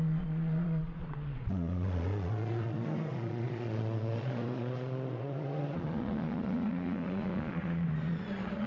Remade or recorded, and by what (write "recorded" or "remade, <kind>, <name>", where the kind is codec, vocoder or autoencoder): remade, vocoder, Vocos